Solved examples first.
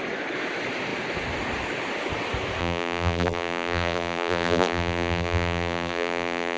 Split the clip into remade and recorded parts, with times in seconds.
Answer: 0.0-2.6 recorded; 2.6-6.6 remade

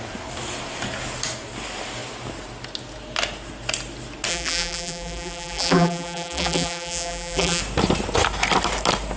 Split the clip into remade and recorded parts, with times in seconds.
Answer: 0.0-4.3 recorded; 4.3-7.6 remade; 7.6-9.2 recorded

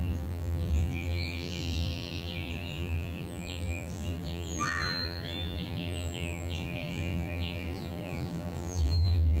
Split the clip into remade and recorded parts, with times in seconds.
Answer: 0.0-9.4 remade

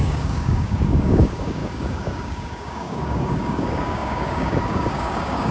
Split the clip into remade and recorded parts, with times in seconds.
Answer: 0.0-5.5 remade

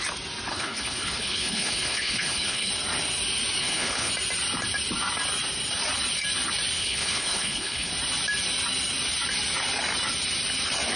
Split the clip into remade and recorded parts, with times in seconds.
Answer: 0.0-0.5 recorded; 0.5-2.7 remade; 2.7-3.6 recorded; 3.6-4.1 remade; 4.1-6.8 recorded; 6.8-7.9 remade; 7.9-11.0 recorded

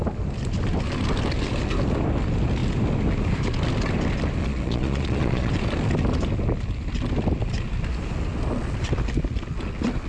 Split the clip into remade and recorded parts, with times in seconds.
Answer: 0.0-4.4 recorded; 4.4-5.5 remade; 5.5-10.1 recorded

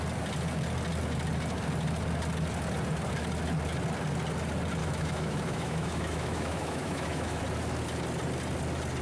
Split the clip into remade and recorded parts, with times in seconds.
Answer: 0.0-4.8 recorded; 4.8-7.4 remade; 7.4-9.0 recorded